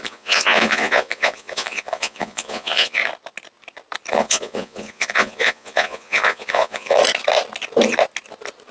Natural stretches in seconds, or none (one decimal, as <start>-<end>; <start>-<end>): 3.0-4.1; 7.0-8.7